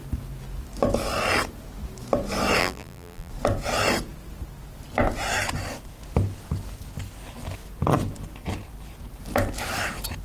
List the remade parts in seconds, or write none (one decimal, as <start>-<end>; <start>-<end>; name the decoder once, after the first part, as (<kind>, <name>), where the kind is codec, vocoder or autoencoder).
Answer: 2.6-3.3 (vocoder, BigVGAN v2)